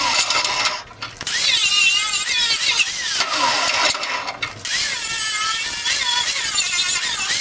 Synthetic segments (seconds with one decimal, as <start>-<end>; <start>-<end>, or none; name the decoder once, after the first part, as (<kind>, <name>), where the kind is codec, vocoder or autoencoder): none